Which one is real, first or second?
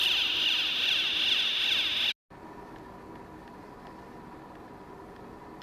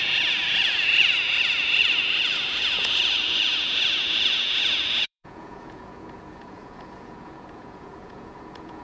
first